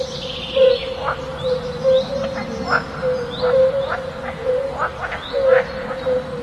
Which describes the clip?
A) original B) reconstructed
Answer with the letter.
A